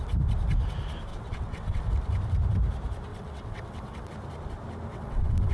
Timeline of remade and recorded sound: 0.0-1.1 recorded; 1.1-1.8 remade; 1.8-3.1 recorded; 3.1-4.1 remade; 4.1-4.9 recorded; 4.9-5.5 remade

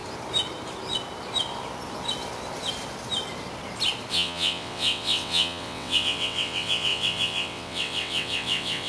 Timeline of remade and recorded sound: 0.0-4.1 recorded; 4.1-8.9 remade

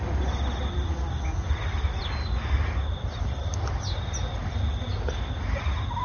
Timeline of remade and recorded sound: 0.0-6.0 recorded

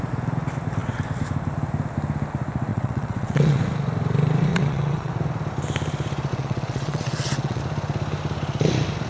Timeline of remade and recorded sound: 0.0-2.7 recorded; 2.7-3.6 remade; 3.6-4.5 recorded; 4.5-5.1 remade; 5.1-6.3 recorded; 6.3-7.6 remade; 7.6-9.1 recorded

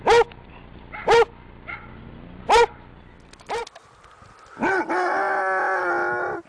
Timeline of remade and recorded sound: 0.0-6.5 recorded

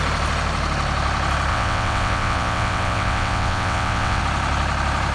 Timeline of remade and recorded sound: 0.0-1.5 recorded; 1.5-4.2 remade; 4.2-5.1 recorded

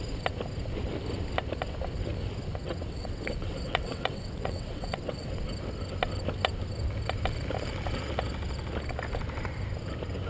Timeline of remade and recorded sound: 0.0-2.6 recorded; 2.6-5.3 remade; 5.3-10.3 recorded

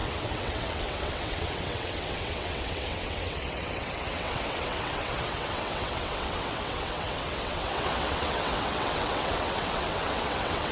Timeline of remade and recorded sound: 0.0-10.7 remade